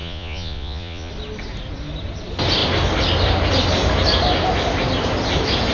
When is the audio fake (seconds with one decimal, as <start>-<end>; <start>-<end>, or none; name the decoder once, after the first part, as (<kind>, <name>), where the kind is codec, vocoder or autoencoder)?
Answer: 0.0-1.1 (vocoder, Vocos)